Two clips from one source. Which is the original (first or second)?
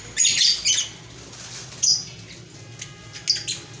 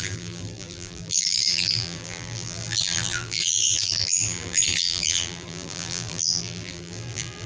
first